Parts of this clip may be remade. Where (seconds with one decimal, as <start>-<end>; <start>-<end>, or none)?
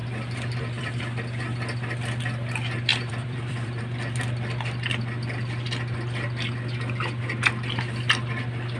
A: 0.0-1.0; 2.9-3.8